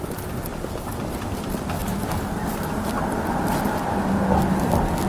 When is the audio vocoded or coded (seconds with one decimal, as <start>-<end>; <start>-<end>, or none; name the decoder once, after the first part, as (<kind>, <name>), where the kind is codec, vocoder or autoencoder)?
1.8-3.6 (vocoder, BigVGAN v2)